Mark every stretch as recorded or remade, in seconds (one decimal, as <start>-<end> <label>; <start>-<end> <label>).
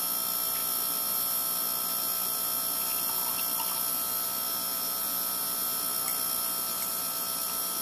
0.0-7.8 recorded